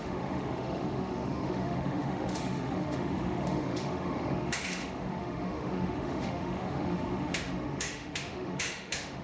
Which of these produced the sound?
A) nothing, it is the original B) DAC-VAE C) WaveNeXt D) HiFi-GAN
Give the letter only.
B